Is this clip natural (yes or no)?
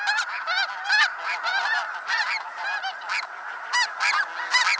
yes